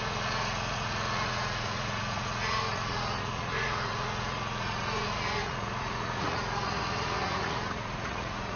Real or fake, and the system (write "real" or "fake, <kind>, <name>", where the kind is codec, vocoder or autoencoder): fake, vocoder, Vocos